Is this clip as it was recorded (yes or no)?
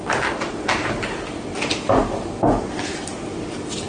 yes